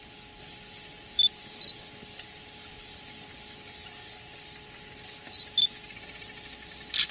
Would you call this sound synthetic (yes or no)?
no